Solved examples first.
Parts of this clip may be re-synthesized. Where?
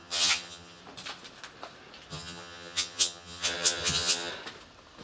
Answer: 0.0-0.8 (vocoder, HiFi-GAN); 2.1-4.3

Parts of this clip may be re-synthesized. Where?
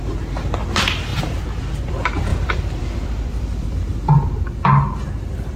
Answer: 1.1-1.9 (vocoder, BigVGAN v2); 2.3-4.1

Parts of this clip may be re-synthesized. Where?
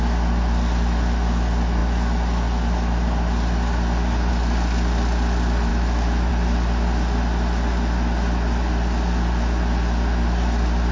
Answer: 5.7-6.3 (autoencoder, DAC-VAE)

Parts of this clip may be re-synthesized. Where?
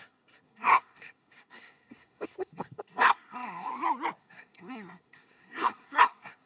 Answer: 0.0-3.7 (codec, SNAC); 4.2-6.5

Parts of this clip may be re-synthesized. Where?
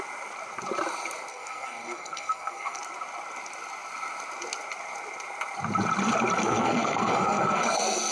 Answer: 1.3-2.8 (codec, SNAC); 6.4-8.1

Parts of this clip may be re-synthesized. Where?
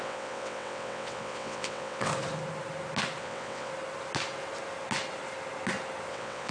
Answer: 0.0-2.1 (vocoder, WaveNeXt); 3.2-3.7; 6.1-6.5